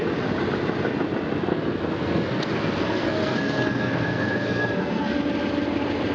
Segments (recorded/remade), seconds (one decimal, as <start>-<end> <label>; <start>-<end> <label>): 0.0-1.5 recorded; 1.5-5.2 remade; 5.2-6.1 recorded